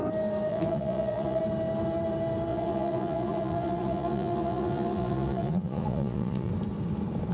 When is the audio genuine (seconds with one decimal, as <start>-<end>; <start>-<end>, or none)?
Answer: 0.0-0.5; 1.4-2.5; 6.5-7.3

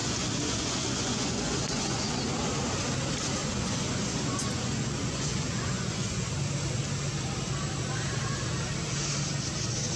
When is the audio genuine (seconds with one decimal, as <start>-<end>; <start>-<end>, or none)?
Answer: 2.2-3.4; 6.3-10.0